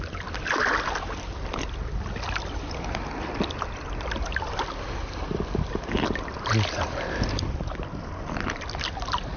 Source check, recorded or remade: recorded